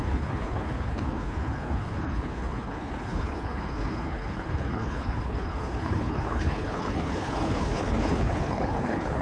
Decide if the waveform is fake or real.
fake